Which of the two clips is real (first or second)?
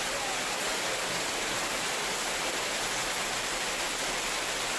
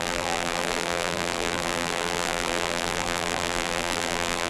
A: first